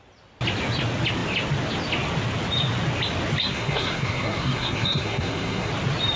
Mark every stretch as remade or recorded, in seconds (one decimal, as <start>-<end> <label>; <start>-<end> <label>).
0.0-3.4 recorded; 3.4-5.7 remade; 5.7-6.2 recorded